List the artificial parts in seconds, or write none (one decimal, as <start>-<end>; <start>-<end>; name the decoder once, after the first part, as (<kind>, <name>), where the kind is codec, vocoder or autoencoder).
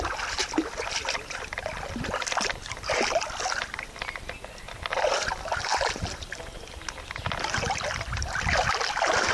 none